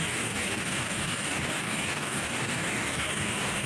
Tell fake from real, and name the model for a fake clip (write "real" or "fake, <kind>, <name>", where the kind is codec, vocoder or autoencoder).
fake, codec, DAC